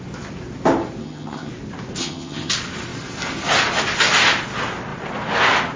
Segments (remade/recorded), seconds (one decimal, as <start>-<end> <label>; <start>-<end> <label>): 0.0-1.0 recorded; 1.0-1.5 remade; 1.5-2.0 recorded; 2.0-2.5 remade; 2.5-5.8 recorded